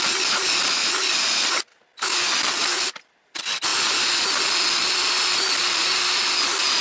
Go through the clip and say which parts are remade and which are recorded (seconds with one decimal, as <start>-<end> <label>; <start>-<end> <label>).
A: 0.0-6.8 recorded